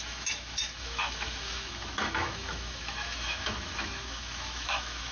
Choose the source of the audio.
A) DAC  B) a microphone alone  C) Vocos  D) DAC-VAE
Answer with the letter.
D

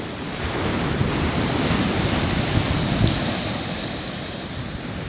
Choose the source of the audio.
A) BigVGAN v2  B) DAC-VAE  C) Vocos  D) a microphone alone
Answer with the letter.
D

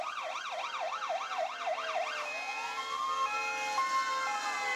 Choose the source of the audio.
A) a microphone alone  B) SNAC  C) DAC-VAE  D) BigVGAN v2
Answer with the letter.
A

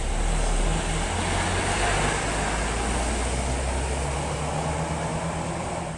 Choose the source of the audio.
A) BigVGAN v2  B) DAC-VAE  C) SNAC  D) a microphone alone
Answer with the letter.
D